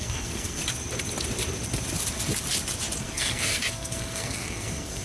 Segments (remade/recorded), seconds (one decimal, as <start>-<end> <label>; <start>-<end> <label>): 0.0-0.6 remade; 0.6-3.0 recorded; 3.0-5.0 remade